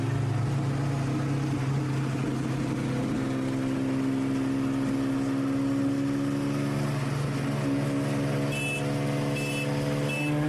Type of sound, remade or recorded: recorded